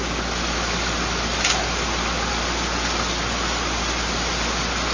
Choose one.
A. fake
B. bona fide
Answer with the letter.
B